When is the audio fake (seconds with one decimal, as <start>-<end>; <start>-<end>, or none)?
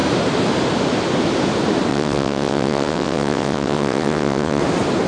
1.9-4.6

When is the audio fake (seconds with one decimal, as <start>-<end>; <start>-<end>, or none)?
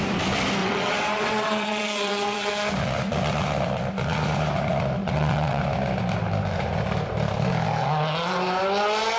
0.6-2.5; 5.0-5.6